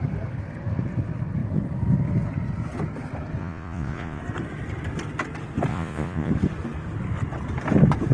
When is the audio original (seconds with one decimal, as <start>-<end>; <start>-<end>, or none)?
0.0-3.4; 4.2-5.7; 6.3-8.1